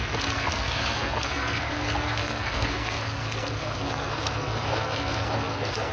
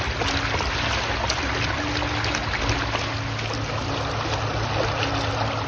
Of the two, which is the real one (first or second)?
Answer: second